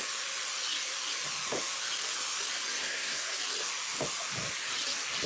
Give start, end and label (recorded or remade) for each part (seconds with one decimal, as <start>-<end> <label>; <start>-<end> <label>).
0.0-2.8 recorded; 2.8-3.4 remade; 3.4-5.3 recorded